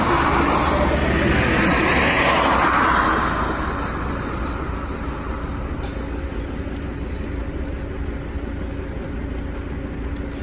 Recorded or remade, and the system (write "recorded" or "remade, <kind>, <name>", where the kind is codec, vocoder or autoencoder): recorded